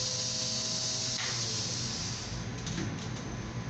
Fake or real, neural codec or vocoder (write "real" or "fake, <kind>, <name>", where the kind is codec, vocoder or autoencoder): real